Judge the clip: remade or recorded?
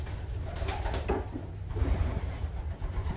recorded